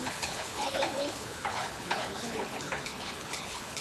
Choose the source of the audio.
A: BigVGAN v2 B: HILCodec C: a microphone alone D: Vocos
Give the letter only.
B